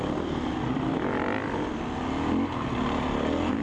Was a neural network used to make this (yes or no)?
no